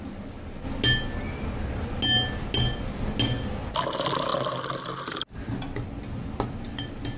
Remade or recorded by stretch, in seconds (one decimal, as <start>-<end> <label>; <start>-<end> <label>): 0.0-7.2 recorded